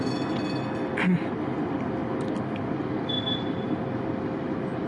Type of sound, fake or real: real